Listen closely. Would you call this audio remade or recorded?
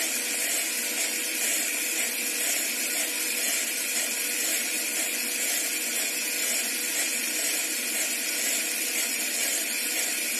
recorded